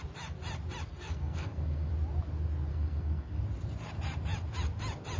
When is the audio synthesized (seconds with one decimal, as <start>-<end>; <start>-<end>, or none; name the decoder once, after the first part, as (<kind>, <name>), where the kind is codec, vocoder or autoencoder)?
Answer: 0.9-1.9 (codec, SNAC); 2.7-3.4